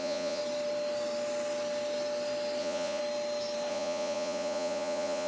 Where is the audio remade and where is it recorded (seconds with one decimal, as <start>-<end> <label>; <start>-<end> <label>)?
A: 0.0-0.4 remade; 0.4-2.6 recorded; 2.6-3.0 remade; 3.0-3.7 recorded; 3.7-5.3 remade